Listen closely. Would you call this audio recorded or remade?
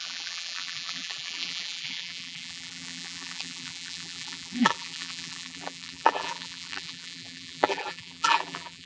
remade